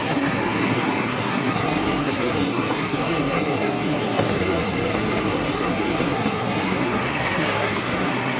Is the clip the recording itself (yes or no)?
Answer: no